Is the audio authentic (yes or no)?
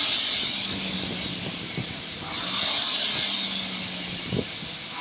yes